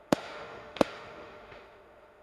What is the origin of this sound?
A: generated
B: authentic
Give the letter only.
A